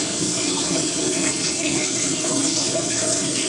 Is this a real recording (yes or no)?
no